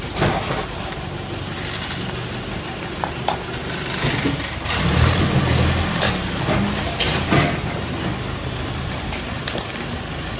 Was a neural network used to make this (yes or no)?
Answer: no